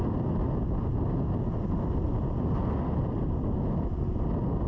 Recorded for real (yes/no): yes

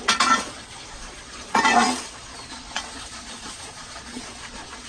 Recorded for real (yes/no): no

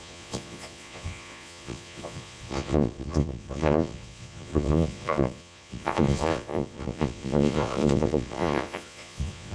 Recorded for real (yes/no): no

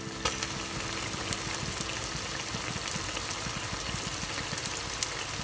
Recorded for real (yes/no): yes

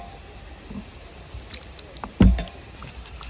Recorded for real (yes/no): yes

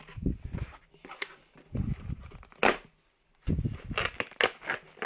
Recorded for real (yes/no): yes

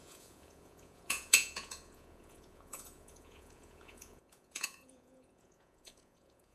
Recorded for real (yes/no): no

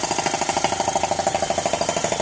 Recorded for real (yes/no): yes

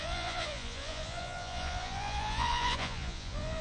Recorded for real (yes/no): no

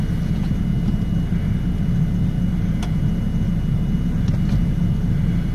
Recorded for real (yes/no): yes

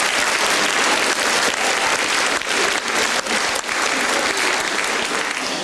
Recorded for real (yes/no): yes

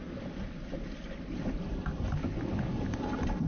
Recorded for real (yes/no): yes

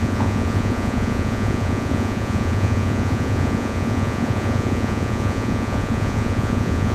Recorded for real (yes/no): no